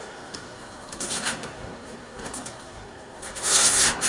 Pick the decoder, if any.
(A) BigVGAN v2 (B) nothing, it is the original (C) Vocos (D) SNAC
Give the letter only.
D